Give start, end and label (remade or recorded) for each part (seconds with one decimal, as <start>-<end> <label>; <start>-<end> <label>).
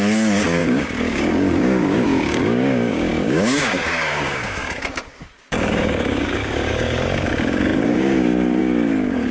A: 0.0-9.3 remade